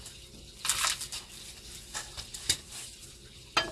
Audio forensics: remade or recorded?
recorded